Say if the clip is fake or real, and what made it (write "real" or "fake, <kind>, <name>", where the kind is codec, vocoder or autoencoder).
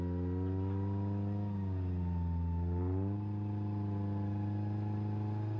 real